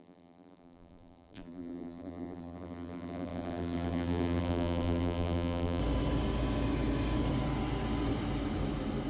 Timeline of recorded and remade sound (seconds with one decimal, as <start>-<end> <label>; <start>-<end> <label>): 0.0-5.8 remade; 5.8-9.1 recorded